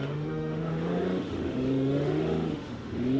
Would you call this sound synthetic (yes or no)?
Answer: yes